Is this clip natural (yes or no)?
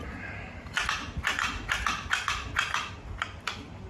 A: yes